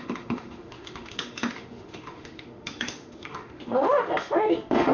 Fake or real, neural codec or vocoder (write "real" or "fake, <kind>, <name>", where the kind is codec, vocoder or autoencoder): fake, autoencoder, DAC-VAE